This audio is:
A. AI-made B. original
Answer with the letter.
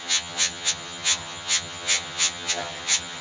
A